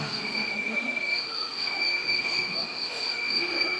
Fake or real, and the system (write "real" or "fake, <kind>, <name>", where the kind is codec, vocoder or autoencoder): fake, autoencoder, DAC-VAE